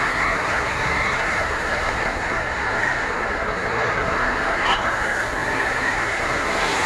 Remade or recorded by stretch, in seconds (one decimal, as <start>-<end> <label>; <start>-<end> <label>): 0.0-6.9 remade